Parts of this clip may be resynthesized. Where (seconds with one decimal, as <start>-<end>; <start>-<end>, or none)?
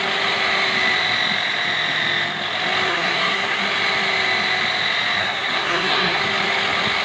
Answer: 2.9-3.6; 5.2-6.2